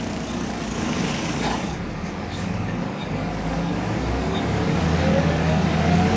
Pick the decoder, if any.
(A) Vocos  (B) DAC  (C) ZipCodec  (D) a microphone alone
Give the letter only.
B